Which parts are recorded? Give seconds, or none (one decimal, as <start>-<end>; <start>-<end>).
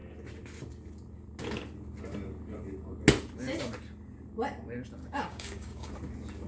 0.0-5.0; 5.9-6.5